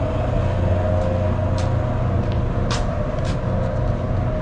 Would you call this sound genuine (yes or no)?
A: yes